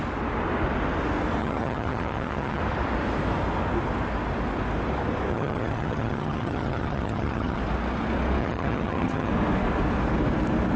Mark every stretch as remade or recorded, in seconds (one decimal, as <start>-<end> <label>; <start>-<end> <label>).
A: 0.0-1.4 recorded; 1.4-2.6 remade; 2.6-5.3 recorded; 5.3-7.6 remade; 7.6-8.4 recorded; 8.4-9.3 remade; 9.3-10.8 recorded